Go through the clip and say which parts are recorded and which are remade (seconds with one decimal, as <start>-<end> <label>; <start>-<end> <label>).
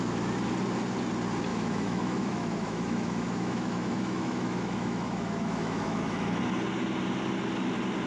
0.0-1.5 recorded; 1.5-6.4 remade; 6.4-8.1 recorded